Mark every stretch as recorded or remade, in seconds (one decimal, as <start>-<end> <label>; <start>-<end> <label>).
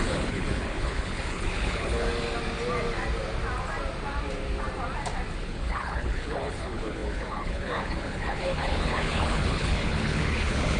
0.0-2.1 remade; 2.1-5.4 recorded; 5.4-10.8 remade